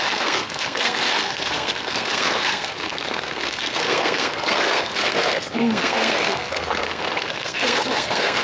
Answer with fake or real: fake